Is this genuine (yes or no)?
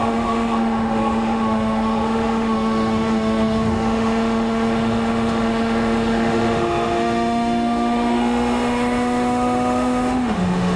no